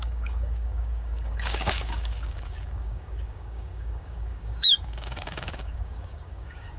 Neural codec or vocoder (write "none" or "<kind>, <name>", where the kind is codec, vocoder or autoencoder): codec, DAC